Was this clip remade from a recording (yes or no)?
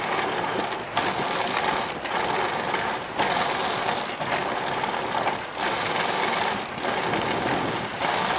no